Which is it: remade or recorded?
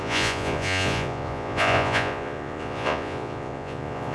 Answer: remade